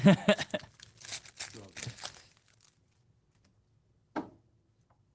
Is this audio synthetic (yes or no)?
no